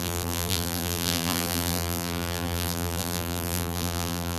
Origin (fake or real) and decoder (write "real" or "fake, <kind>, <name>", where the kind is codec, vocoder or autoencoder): fake, vocoder, BigVGAN v2